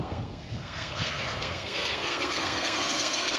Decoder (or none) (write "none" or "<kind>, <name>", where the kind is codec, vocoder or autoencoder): codec, SNAC